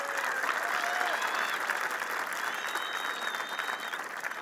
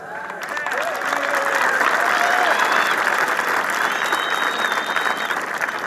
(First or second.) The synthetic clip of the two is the second